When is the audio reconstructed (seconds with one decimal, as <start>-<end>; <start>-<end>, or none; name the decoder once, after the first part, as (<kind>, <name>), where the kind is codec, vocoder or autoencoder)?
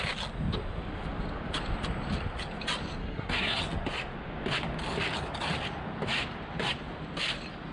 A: 3.0-3.6 (codec, SNAC)